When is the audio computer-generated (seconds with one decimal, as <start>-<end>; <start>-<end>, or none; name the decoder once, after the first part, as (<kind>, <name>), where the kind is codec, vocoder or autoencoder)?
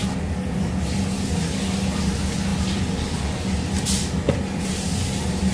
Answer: none